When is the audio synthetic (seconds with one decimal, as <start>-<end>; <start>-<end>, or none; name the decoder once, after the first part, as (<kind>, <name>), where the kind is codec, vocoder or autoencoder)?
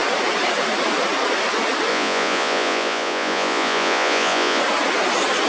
1.9-4.6 (vocoder, Vocos)